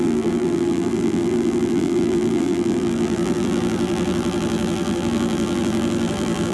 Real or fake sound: fake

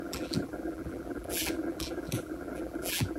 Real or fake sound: fake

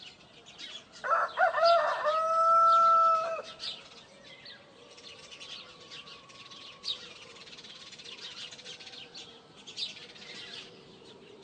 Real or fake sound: real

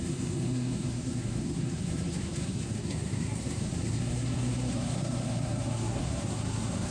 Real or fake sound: fake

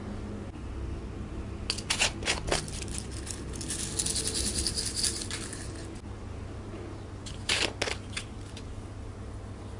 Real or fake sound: real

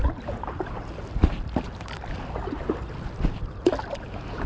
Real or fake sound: real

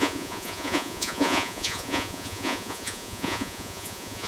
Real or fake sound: fake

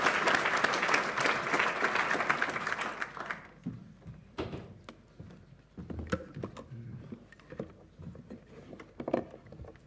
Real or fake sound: real